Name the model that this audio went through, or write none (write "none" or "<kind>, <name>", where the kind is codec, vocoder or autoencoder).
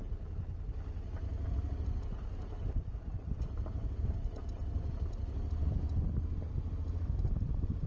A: none